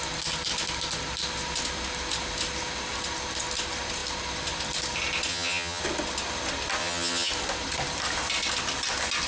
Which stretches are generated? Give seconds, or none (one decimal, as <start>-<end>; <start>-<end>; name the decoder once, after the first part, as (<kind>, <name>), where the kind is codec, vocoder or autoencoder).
5.3-5.8 (vocoder, HiFi-GAN); 6.8-7.3